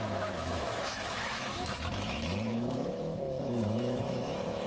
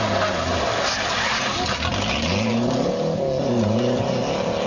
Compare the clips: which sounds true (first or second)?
second